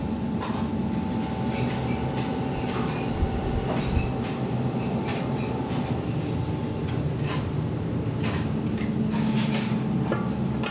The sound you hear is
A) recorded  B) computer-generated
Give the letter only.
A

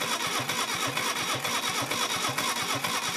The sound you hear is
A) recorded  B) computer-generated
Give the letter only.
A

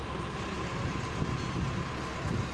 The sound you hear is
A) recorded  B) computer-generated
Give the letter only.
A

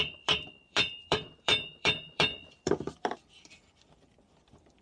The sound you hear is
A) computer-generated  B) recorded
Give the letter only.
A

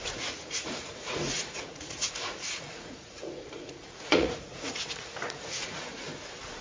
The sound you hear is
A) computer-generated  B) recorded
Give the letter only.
A